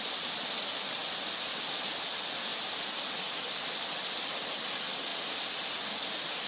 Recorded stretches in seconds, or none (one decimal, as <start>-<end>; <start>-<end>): 0.0-6.5